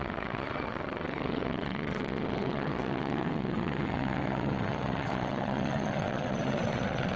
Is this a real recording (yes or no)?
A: no